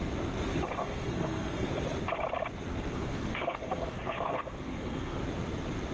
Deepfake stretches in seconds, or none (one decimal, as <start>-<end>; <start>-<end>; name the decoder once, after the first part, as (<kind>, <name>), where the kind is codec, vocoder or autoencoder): 0.8-1.7 (codec, SNAC); 2.7-5.2